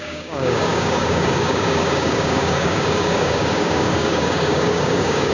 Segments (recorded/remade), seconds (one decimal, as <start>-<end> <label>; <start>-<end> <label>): 0.0-5.3 remade